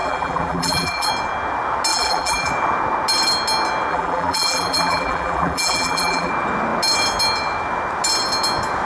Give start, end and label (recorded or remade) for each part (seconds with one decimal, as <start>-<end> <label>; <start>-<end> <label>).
0.0-1.1 remade; 1.1-1.9 recorded; 1.9-2.5 remade; 2.5-3.9 recorded; 3.9-6.3 remade; 6.3-8.9 recorded